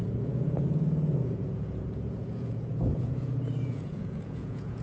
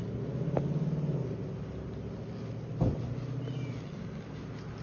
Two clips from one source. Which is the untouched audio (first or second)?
second